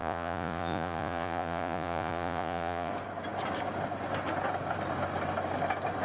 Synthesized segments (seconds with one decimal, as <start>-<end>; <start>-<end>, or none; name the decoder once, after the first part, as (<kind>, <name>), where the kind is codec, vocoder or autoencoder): 0.0-2.9 (vocoder, Vocos)